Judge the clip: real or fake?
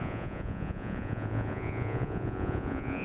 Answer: fake